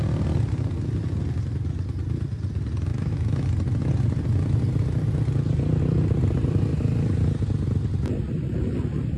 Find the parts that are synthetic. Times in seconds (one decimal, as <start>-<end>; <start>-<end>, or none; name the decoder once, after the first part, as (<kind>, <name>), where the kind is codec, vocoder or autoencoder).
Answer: 2.9-3.5 (autoencoder, DAC-VAE)